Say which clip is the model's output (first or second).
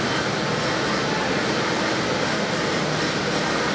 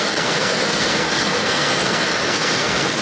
second